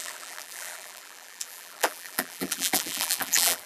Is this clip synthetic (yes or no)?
yes